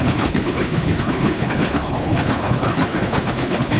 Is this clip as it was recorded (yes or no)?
no